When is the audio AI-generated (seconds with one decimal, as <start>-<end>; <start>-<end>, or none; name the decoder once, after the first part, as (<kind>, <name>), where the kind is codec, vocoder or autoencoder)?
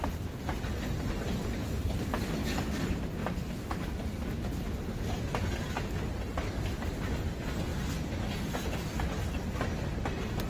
1.6-2.1 (vocoder, BigVGAN v2)